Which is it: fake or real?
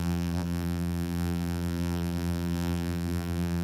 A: fake